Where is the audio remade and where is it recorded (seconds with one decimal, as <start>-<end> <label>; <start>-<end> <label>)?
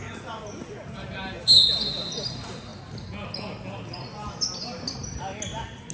0.0-5.9 recorded